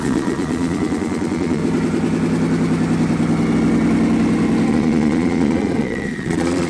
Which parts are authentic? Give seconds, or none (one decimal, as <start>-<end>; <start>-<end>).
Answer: 1.6-4.7